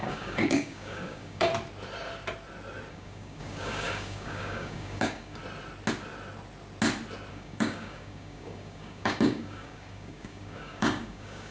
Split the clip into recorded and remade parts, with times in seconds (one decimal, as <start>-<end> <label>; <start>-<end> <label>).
0.0-1.5 remade; 1.5-2.9 recorded; 2.9-5.4 remade; 5.4-7.3 recorded; 7.3-11.5 remade